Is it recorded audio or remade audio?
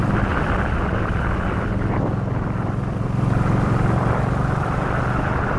remade